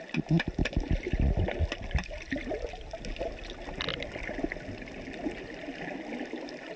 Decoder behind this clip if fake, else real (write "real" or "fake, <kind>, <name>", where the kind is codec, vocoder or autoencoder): real